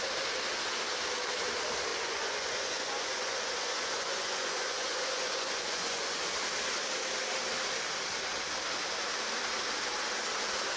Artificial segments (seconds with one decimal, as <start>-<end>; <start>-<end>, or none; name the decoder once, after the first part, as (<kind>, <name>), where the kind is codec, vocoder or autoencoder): 1.9-6.2 (vocoder, Vocos)